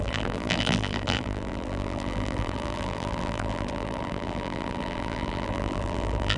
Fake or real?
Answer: fake